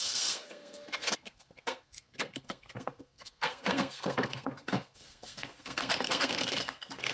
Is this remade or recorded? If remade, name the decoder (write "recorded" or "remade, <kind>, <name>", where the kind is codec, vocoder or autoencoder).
remade, codec, SNAC